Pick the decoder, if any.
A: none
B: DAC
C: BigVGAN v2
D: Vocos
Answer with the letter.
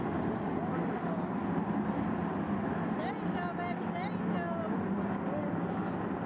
A